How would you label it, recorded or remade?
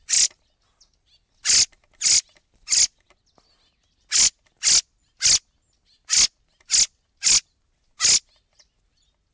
recorded